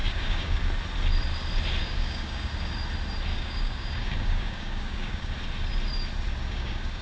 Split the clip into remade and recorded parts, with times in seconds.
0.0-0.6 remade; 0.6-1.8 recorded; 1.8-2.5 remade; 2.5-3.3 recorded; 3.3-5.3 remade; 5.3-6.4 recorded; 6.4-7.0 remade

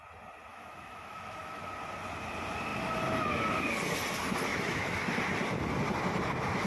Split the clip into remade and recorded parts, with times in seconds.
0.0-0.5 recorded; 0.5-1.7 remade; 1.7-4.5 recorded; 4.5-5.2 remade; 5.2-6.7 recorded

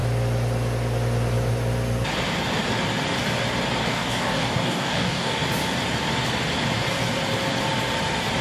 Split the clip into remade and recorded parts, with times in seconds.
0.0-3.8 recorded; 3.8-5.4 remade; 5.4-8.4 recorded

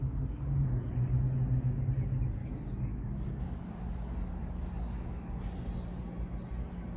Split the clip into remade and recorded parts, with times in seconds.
0.0-2.4 recorded; 2.4-5.4 remade; 5.4-7.0 recorded